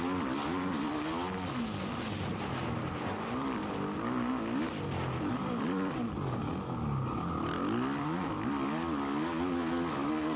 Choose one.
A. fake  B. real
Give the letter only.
B